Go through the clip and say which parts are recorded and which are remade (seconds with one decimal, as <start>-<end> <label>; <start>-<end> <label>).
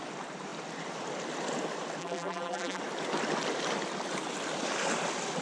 0.0-2.0 recorded; 2.0-2.8 remade; 2.8-5.4 recorded